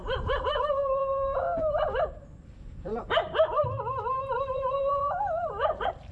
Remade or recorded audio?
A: remade